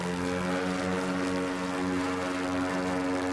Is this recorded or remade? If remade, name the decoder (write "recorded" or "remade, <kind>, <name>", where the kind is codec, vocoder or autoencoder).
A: recorded